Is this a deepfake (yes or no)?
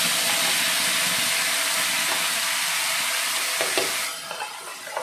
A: no